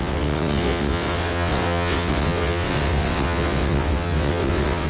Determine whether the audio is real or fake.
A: fake